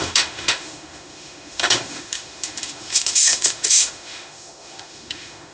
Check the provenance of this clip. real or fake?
fake